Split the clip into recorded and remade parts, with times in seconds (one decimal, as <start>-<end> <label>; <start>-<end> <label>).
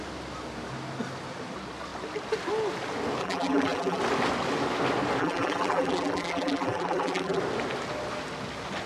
0.0-3.2 recorded; 3.2-4.0 remade; 4.0-5.2 recorded; 5.2-7.4 remade; 7.4-8.9 recorded